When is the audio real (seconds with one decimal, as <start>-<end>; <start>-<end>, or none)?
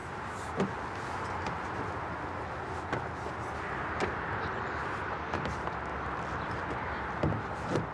0.0-7.9